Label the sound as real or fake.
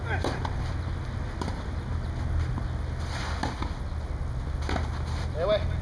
real